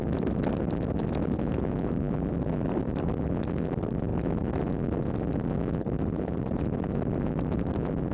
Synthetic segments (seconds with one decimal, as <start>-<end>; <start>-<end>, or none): 1.5-4.1; 5.8-8.1